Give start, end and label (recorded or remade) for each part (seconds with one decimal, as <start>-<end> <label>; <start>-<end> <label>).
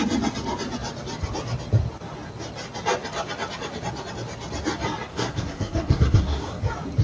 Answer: 0.0-5.1 recorded; 5.1-6.6 remade; 6.6-7.0 recorded